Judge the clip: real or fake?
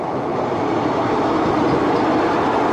real